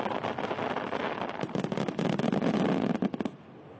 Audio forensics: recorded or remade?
recorded